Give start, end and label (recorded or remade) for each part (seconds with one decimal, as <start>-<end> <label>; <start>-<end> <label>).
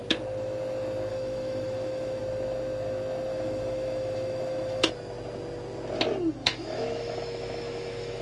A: 0.0-1.1 recorded; 1.1-2.2 remade; 2.2-3.3 recorded; 3.3-4.9 remade; 4.9-6.4 recorded; 6.4-8.2 remade